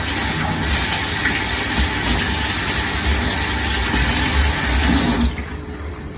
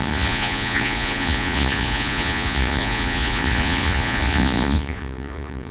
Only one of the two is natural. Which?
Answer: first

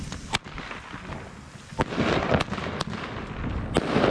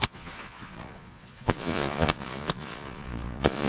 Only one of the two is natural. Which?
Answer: first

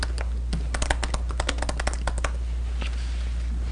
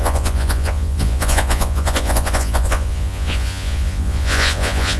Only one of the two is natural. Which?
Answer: first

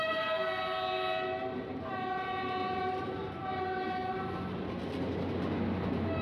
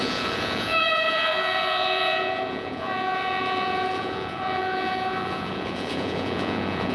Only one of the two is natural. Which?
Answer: first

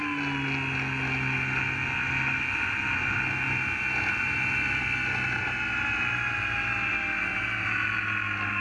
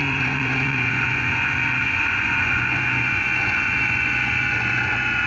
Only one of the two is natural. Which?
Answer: first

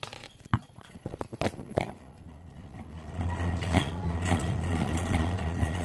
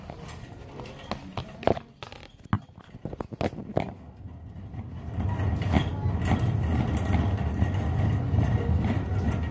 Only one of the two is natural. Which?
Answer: second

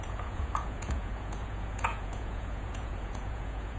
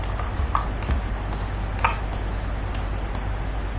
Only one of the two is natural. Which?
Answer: second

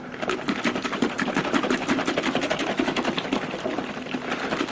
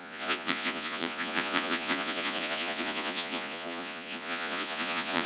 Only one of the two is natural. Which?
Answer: first